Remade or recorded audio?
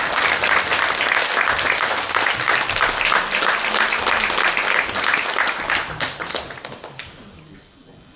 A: recorded